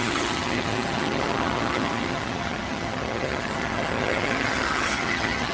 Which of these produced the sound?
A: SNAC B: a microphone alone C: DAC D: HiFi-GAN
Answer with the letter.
D